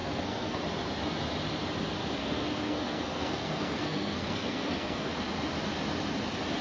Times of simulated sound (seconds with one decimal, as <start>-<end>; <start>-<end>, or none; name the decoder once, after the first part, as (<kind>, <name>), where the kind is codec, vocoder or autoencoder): 0.0-0.6 (codec, SNAC); 2.2-5.1

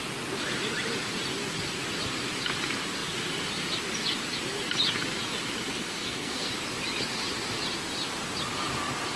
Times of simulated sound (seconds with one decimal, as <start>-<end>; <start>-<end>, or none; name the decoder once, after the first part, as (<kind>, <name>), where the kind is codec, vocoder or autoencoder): 5.7-6.5 (codec, SNAC)